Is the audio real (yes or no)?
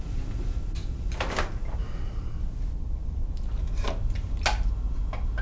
yes